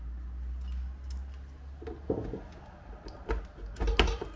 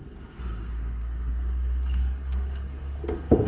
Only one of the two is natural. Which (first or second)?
first